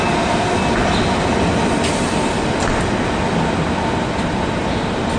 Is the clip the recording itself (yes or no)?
yes